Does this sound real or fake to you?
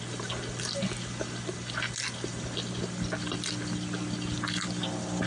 real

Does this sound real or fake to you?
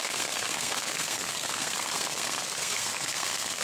fake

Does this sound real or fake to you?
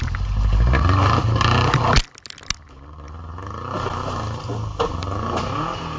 real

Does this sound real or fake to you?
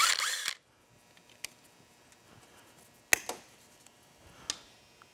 real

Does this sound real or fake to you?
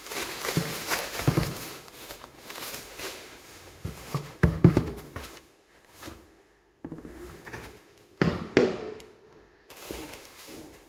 fake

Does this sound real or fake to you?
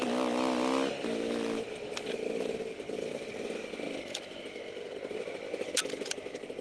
real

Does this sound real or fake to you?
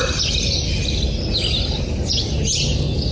real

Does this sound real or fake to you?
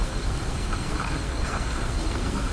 fake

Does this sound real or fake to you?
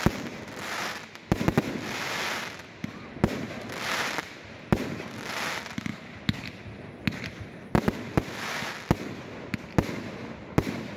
real